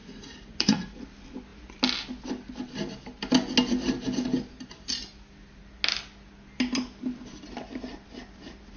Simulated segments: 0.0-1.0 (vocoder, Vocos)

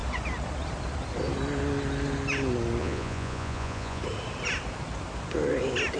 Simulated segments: 2.8-4.0 (vocoder, Vocos)

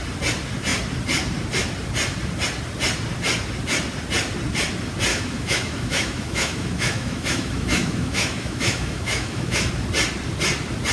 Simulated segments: 5.1-9.7 (autoencoder, DAC-VAE)

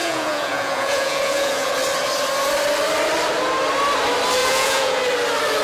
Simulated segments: 0.0-1.7 (vocoder, Vocos); 4.4-5.0

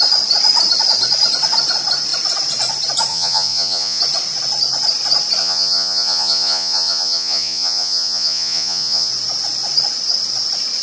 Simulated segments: 3.1-4.0 (vocoder, Vocos); 5.4-9.1

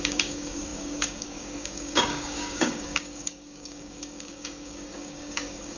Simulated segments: 0.0-5.8 (codec, DAC)

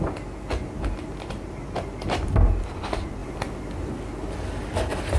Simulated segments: 3.2-5.2 (vocoder, BigVGAN v2)

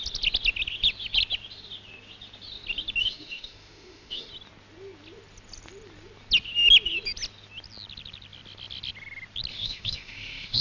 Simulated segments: 3.0-4.3 (autoencoder, DAC-VAE); 9.5-10.6